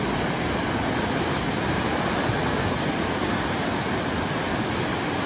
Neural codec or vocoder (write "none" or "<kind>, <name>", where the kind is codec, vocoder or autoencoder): none